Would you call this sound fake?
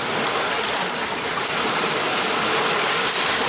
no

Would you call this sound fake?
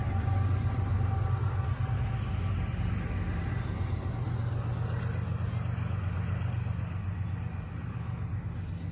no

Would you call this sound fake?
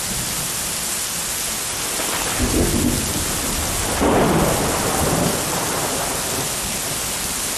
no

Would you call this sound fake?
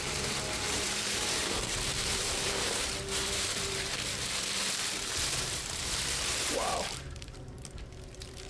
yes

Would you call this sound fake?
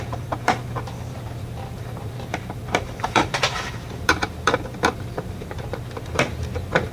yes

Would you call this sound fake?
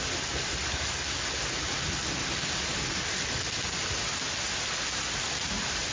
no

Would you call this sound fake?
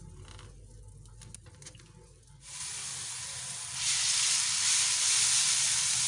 no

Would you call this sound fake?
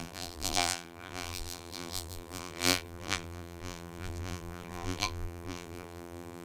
yes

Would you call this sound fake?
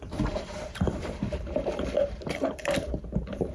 yes